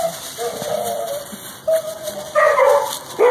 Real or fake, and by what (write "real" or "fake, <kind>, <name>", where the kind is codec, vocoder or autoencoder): real